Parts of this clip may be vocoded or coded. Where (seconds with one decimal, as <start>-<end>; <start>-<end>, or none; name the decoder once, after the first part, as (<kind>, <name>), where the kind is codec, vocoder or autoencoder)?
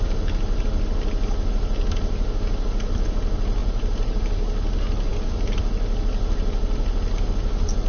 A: 3.6-4.2 (vocoder, BigVGAN v2); 5.1-5.6